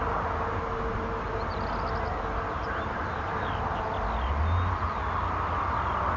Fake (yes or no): no